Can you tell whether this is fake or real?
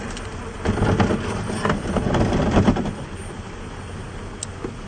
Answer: real